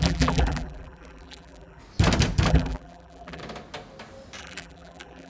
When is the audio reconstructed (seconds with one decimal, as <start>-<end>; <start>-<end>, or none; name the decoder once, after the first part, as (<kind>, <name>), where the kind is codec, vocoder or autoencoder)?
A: 0.0-1.8 (vocoder, BigVGAN v2); 2.5-3.4; 4.4-5.3